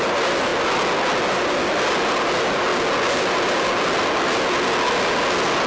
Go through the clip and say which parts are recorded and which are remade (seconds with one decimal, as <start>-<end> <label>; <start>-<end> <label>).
0.0-5.7 recorded